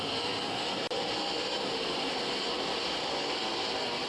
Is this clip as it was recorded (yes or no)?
yes